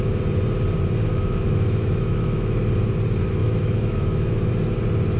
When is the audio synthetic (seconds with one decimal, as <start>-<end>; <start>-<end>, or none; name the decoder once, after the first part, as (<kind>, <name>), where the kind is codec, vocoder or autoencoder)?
1.1-2.6 (autoencoder, DAC-VAE); 3.4-4.5